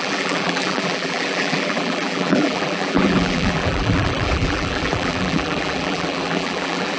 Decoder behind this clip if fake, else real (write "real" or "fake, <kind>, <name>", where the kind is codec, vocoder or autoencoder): fake, vocoder, BigVGAN v2